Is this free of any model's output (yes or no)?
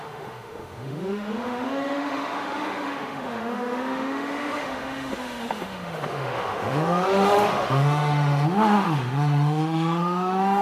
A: no